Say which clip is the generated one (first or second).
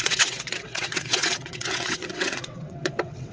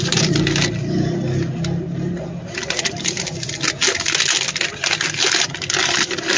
first